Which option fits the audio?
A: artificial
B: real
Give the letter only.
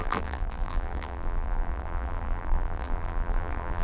A